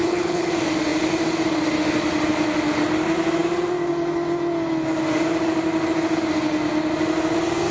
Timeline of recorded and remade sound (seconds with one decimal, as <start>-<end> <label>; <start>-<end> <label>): 0.0-0.5 remade; 0.5-7.7 recorded